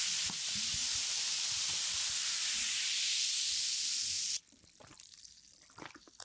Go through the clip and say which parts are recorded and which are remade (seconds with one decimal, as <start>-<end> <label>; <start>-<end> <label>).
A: 0.0-6.2 recorded